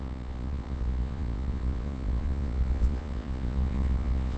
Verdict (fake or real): fake